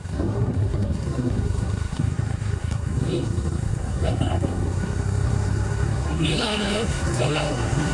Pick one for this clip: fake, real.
fake